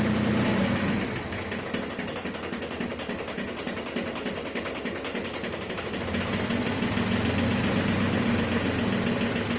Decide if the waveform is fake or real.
real